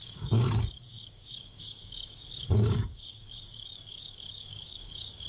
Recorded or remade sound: remade